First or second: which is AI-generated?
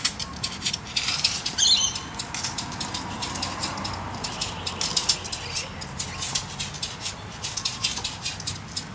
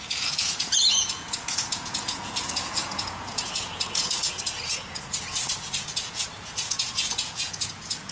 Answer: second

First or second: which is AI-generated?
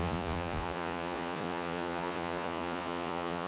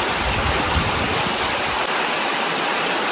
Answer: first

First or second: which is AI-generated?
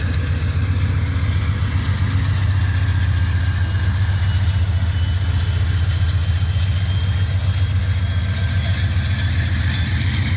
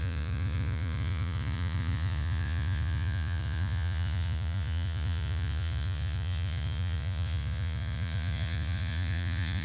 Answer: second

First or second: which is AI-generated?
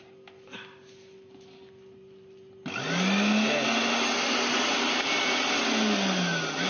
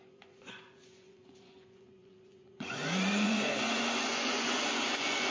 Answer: second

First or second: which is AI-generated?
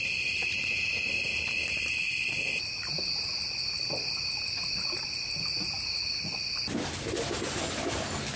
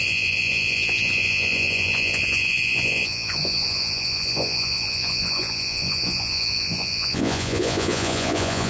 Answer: second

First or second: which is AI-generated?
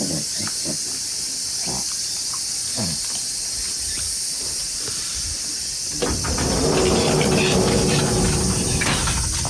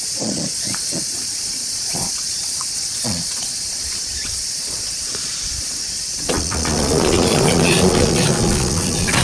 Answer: second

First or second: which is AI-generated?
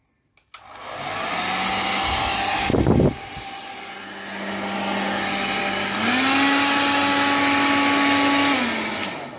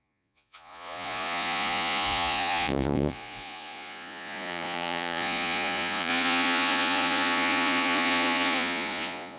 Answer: second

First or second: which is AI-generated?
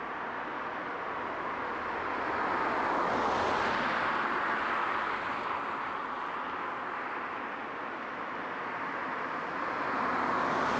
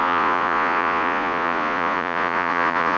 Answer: second